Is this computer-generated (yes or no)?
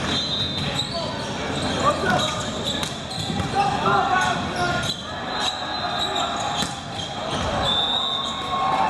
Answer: no